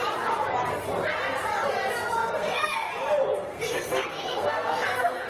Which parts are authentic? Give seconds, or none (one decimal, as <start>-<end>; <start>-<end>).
0.0-2.2; 2.9-3.3